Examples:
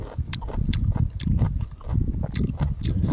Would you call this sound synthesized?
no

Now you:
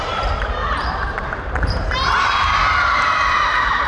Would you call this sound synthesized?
yes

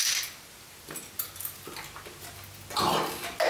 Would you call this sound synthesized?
no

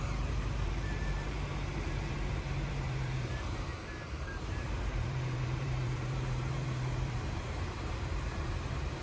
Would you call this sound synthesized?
yes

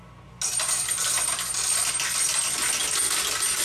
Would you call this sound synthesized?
no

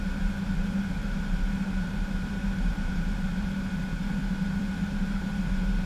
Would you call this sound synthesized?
yes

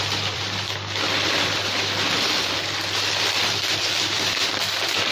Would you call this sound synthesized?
yes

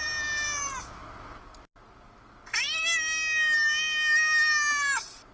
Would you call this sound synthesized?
no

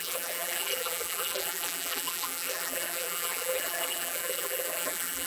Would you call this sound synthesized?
yes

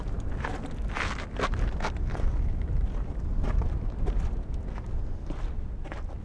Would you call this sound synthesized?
yes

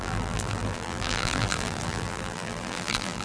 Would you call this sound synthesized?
yes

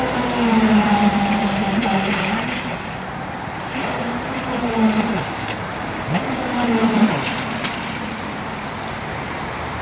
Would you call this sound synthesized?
yes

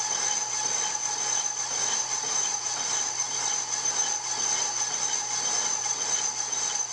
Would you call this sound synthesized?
no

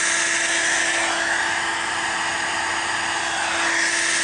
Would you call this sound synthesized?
no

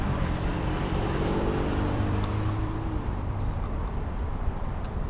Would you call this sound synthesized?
yes